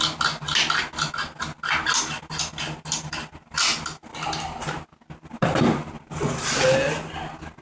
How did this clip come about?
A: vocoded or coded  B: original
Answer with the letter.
B